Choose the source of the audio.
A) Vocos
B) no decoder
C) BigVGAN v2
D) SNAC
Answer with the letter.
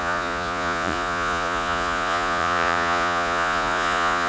A